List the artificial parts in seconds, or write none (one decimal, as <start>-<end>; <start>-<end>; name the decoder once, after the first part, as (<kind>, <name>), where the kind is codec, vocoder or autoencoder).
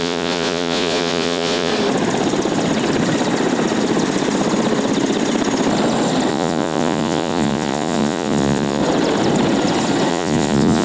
0.0-1.7 (vocoder, Vocos); 6.3-8.8; 10.1-10.8